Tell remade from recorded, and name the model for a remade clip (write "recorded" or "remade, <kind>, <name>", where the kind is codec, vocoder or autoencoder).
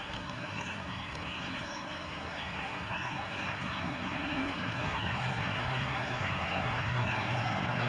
remade, codec, SNAC